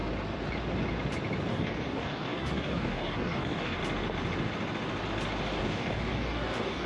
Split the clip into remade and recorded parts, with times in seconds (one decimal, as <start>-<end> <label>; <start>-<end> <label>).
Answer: 0.0-1.5 recorded; 1.5-3.8 remade; 3.8-5.6 recorded; 5.6-6.9 remade